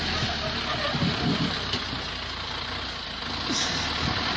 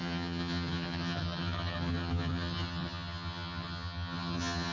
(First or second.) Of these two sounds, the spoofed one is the second